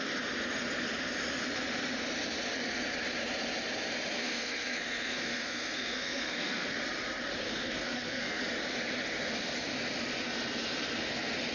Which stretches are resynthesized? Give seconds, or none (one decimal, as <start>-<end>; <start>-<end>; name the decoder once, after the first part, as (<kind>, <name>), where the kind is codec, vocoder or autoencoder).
4.2-6.8 (codec, SNAC); 7.4-8.4